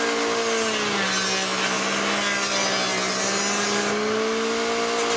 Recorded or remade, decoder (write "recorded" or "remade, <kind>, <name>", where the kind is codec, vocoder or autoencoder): recorded